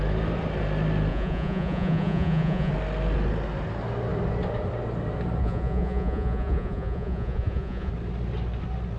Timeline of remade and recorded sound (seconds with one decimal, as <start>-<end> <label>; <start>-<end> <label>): 0.0-1.1 recorded; 1.1-2.7 remade; 2.7-5.4 recorded; 5.4-7.9 remade; 7.9-9.0 recorded